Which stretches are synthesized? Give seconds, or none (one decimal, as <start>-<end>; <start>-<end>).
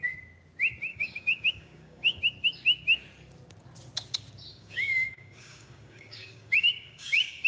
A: 0.9-2.2; 4.5-7.5